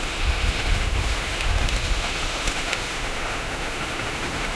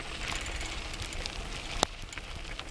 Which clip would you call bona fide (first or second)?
second